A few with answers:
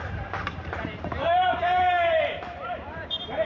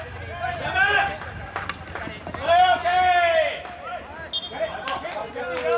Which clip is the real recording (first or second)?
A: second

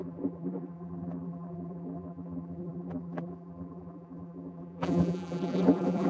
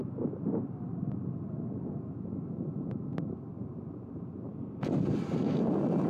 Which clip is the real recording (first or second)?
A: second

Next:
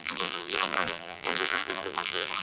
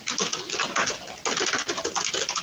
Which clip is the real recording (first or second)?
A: second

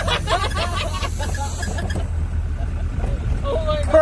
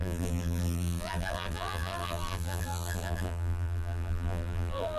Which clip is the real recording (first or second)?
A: first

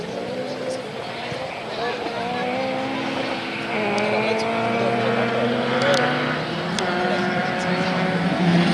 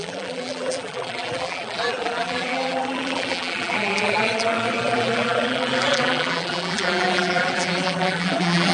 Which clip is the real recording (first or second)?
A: first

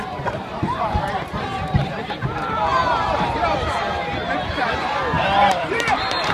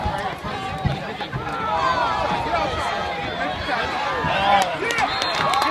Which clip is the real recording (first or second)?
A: second